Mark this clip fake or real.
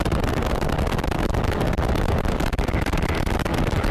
real